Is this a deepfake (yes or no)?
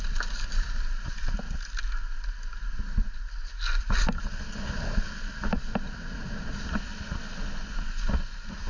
no